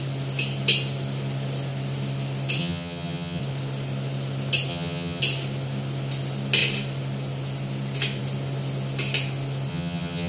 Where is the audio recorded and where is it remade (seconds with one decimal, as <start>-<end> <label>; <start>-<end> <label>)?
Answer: 0.0-2.6 recorded; 2.6-3.4 remade; 3.4-4.7 recorded; 4.7-5.2 remade; 5.2-9.7 recorded; 9.7-10.3 remade